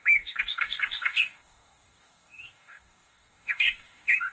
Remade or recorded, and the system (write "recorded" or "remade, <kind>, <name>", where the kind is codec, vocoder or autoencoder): remade, codec, DAC